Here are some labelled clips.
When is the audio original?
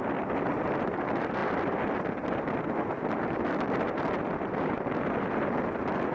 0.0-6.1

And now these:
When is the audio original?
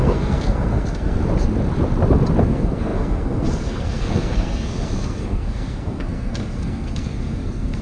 1.2-2.4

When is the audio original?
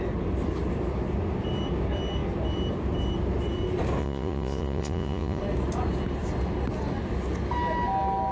0.0-4.0; 5.4-8.3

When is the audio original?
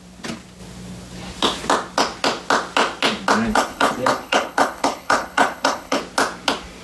0.0-3.5; 6.0-6.8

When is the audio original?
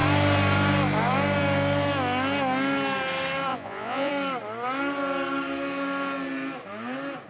0.0-3.5; 4.1-7.3